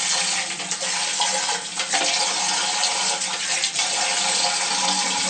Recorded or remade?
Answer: recorded